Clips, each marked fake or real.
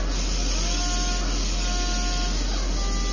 real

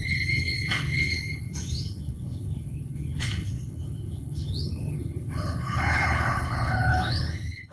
fake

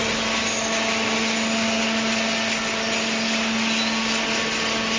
real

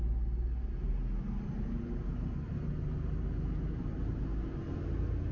real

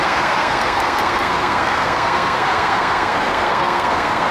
fake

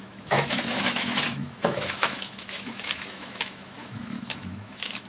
fake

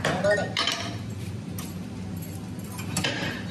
real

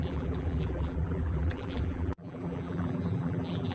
fake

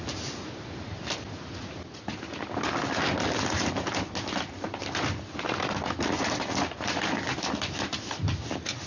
real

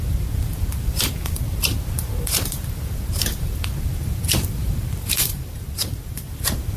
fake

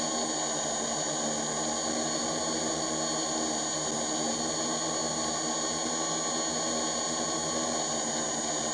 real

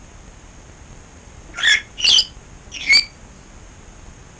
real